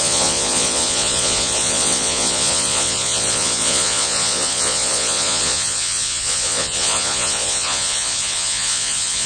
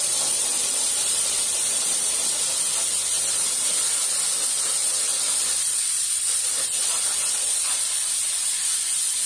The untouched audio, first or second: second